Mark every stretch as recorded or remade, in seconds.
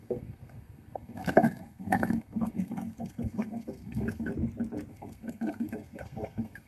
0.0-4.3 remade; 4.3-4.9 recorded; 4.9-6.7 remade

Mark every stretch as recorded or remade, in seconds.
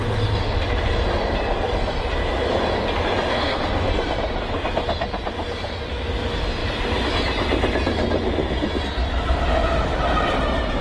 0.0-3.3 recorded; 3.3-3.9 remade; 3.9-10.8 recorded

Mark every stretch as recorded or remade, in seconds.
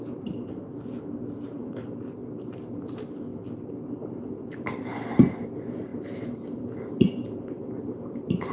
0.0-0.7 remade; 0.7-1.4 recorded; 1.4-2.2 remade; 2.2-2.8 recorded; 2.8-3.3 remade; 3.3-4.6 recorded; 4.6-8.5 remade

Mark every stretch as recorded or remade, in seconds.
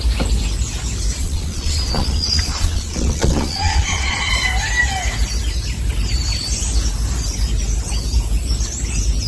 0.0-1.2 recorded; 1.2-4.3 remade; 4.3-9.3 recorded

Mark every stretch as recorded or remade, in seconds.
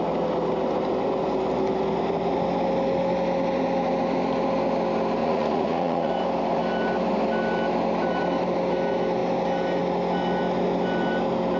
0.0-5.2 recorded; 5.2-6.1 remade; 6.1-11.6 recorded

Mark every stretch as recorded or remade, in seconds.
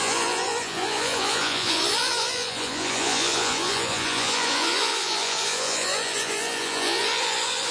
0.0-7.7 remade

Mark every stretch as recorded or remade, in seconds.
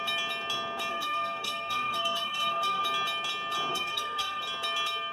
0.0-0.9 recorded; 0.9-2.8 remade; 2.8-3.7 recorded; 3.7-4.4 remade; 4.4-5.1 recorded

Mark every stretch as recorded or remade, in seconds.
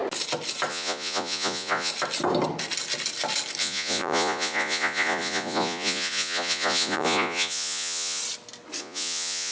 0.0-0.7 recorded; 0.7-1.9 remade; 1.9-3.6 recorded; 3.6-8.2 remade; 8.2-8.8 recorded; 8.8-9.5 remade